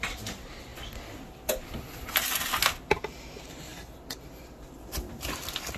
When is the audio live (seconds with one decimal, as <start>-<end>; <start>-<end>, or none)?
0.0-5.8